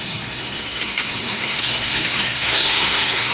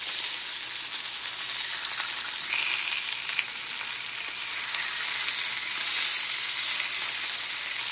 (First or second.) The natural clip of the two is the second